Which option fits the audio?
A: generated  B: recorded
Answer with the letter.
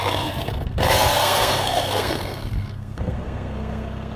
A